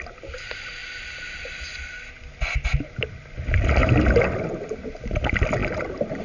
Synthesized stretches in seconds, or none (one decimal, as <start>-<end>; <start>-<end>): none